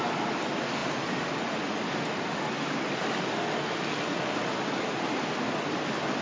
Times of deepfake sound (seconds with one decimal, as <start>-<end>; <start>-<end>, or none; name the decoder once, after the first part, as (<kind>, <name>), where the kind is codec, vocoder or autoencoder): none